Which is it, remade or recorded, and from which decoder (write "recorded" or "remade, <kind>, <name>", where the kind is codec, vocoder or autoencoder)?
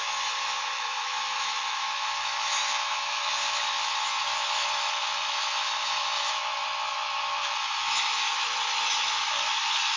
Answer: remade, autoencoder, DAC-VAE